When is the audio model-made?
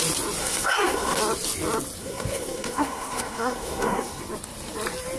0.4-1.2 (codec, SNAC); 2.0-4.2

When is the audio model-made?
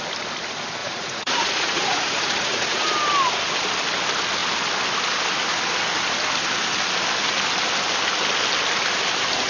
0.8-2.9 (vocoder, Vocos)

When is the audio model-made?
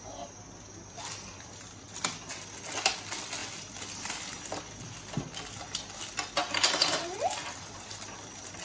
6.4-8.6 (vocoder, BigVGAN v2)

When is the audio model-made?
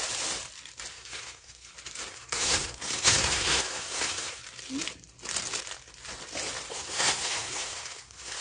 0.9-1.7 (codec, SNAC); 2.1-4.4; 6.7-8.4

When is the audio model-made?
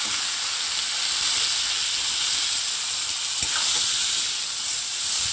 none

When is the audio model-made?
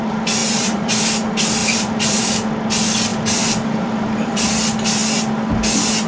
0.4-1.1 (vocoder, BigVGAN v2); 1.6-2.3; 3.1-4.5